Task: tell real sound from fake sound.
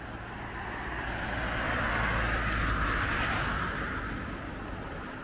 real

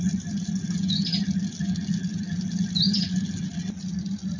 real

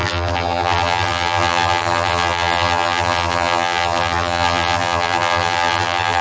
fake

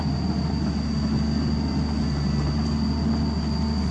real